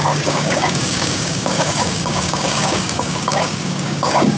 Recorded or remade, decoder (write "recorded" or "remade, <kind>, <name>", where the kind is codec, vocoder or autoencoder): remade, codec, DAC